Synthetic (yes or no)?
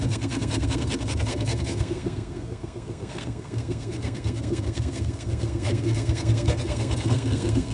yes